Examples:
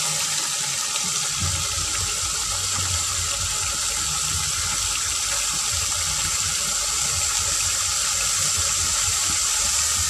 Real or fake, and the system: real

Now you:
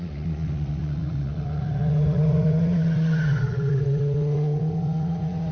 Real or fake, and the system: fake, vocoder, Vocos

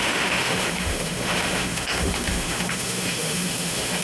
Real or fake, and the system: fake, autoencoder, DAC-VAE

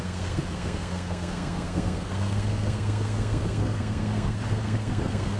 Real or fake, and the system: fake, codec, SNAC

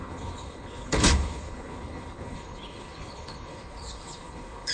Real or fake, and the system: fake, codec, HILCodec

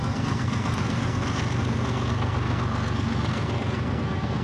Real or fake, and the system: fake, codec, SNAC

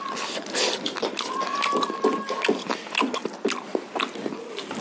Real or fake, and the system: real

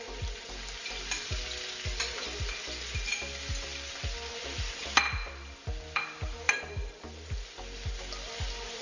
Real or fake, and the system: real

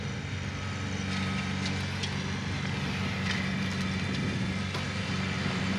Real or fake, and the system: real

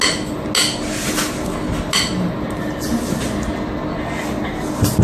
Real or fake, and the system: real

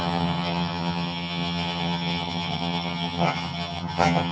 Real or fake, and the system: fake, vocoder, HiFi-GAN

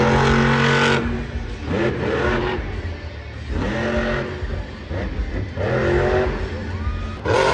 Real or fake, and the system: real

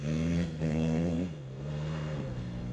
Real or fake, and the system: fake, codec, SNAC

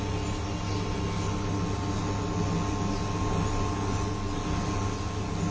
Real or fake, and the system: real